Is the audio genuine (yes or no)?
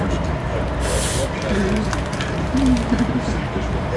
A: yes